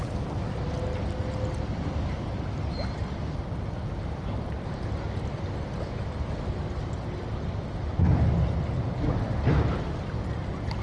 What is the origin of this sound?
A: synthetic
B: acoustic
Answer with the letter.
B